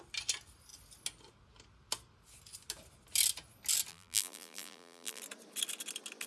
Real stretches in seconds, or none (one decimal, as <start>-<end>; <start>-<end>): 0.0-3.9; 5.2-6.3